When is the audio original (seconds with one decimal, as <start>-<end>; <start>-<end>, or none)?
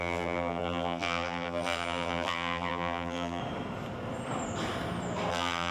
3.4-5.3